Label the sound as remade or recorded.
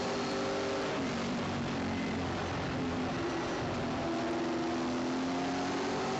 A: recorded